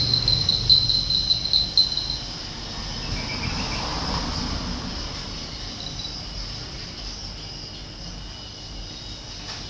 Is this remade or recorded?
recorded